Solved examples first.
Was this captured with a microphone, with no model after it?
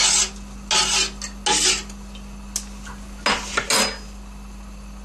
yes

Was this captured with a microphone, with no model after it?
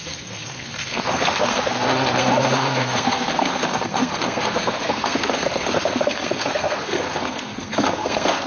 no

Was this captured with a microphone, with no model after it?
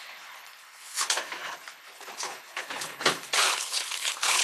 no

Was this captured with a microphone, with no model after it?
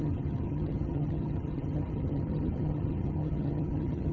no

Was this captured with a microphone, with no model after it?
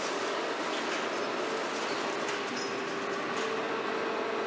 yes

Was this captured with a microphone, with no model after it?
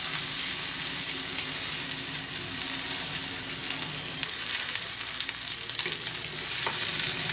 yes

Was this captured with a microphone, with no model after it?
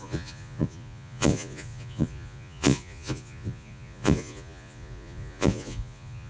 no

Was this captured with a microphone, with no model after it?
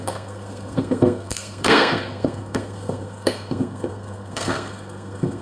no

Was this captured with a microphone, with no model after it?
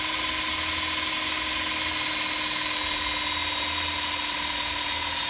yes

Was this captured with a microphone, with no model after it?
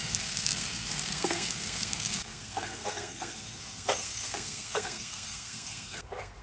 no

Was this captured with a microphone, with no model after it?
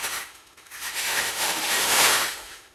no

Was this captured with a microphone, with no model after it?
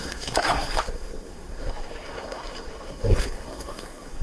no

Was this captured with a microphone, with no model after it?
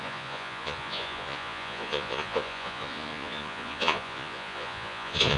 no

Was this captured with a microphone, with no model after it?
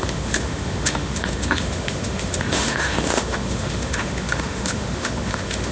no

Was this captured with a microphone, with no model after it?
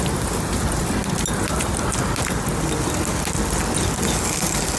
yes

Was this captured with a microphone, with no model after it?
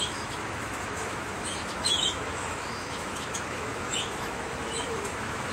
no